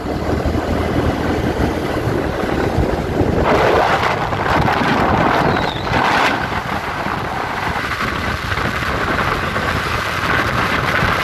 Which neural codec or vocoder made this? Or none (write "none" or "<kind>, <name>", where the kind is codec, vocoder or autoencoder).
none